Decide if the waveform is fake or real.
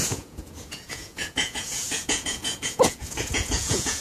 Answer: fake